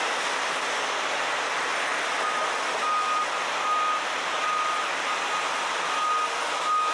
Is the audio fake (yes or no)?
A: no